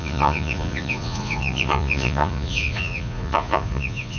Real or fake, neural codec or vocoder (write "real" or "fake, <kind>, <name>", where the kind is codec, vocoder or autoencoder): fake, vocoder, Vocos